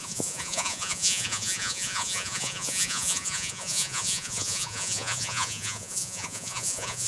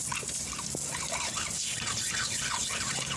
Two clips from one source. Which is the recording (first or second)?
second